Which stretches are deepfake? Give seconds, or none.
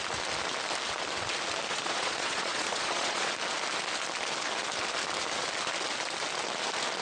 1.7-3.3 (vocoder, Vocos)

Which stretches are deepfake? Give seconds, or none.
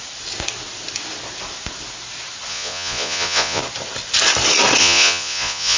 2.5-3.6 (vocoder, Vocos); 4.8-5.8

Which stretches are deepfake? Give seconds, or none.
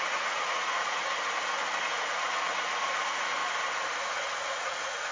0.0-1.0 (vocoder, Vocos); 1.8-3.4; 4.1-5.1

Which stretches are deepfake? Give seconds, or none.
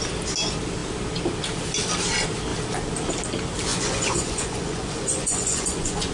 3.7-6.1 (vocoder, Vocos)